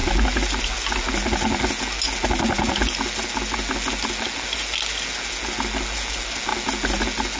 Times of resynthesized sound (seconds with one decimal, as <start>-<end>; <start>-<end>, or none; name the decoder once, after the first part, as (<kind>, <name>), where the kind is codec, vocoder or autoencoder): none